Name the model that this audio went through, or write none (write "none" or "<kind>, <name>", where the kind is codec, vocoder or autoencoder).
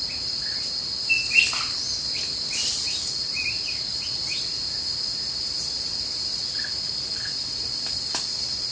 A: none